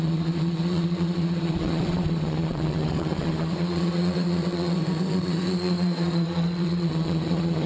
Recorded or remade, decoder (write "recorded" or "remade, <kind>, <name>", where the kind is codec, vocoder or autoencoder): remade, vocoder, WaveNeXt